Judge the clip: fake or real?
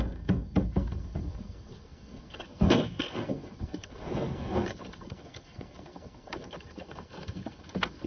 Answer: fake